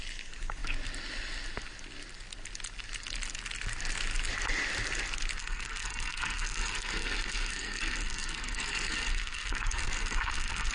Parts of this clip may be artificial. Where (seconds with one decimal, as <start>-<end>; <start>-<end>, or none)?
5.4-10.7